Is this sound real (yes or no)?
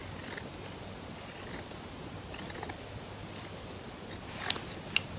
yes